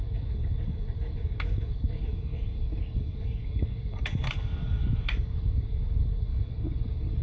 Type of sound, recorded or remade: remade